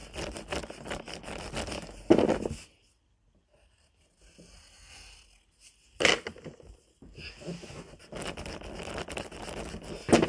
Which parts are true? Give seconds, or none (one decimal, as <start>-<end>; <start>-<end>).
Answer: 0.0-10.3